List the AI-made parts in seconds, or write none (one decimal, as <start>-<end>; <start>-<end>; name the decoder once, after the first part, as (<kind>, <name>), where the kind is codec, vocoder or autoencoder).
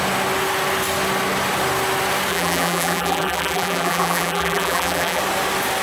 2.3-5.2 (vocoder, BigVGAN v2)